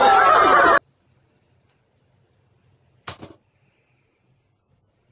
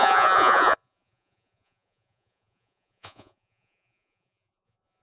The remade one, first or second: second